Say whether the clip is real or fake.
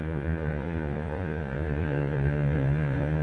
fake